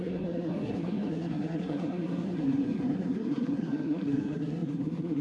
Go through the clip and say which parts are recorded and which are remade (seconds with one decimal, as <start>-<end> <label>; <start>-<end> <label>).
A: 0.0-5.2 remade